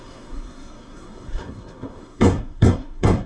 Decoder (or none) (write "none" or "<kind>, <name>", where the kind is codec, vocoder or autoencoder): codec, SNAC